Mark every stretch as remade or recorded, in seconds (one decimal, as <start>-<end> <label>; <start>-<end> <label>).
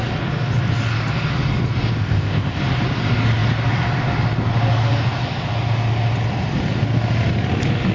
0.0-2.0 recorded; 2.0-2.6 remade; 2.6-7.9 recorded